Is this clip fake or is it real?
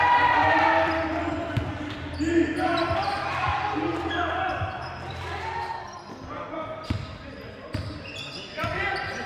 fake